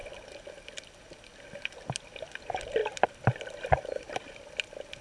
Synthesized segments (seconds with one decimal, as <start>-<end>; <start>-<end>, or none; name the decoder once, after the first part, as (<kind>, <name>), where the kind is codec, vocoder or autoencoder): none